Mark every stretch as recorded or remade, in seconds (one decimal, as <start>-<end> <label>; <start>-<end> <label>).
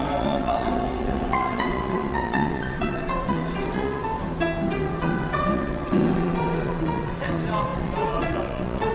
0.0-4.0 remade; 4.0-4.7 recorded; 4.7-8.9 remade